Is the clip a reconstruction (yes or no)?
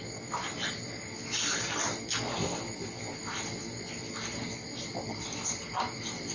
no